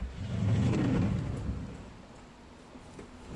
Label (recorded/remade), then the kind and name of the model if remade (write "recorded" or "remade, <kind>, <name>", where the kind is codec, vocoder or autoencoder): recorded